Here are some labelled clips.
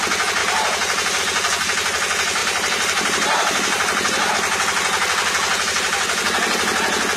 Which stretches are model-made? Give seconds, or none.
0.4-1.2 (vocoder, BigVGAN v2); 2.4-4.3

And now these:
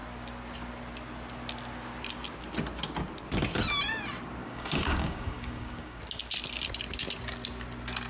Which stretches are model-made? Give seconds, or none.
4.4-6.0 (codec, DAC)

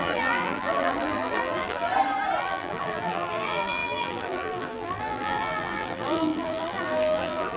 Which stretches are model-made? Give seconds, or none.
0.0-1.9 (vocoder, BigVGAN v2); 2.4-7.6

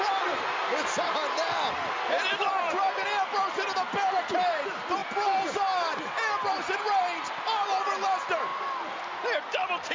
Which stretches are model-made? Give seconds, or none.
none

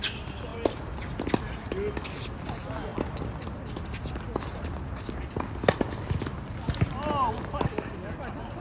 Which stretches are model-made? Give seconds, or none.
none

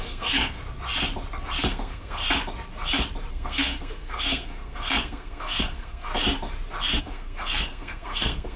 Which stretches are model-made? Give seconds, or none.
0.0-0.6 (codec, SNAC); 1.6-2.2; 3.3-6.1; 7.0-8.6

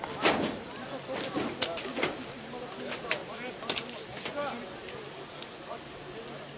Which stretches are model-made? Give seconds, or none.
none

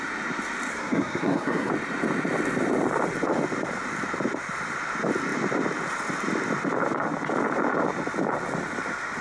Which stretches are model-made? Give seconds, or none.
0.7-1.7 (codec, SNAC)